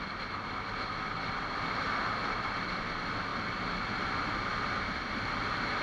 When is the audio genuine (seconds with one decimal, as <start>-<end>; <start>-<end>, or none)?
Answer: 0.0-5.8